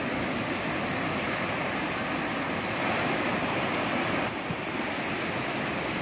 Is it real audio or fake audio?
real